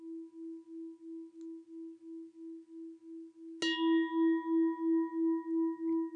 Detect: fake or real real